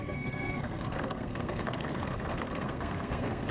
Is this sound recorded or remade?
remade